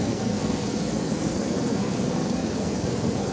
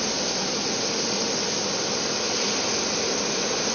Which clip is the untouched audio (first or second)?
second